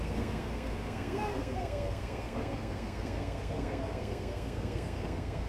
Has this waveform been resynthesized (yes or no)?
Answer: yes